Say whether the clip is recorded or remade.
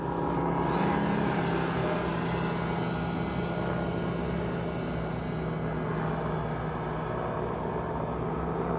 recorded